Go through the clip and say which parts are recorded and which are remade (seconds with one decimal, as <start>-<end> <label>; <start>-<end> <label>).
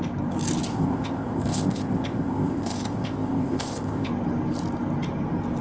0.0-0.7 recorded; 0.7-4.1 remade; 4.1-5.6 recorded